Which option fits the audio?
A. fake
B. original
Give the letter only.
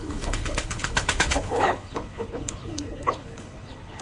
A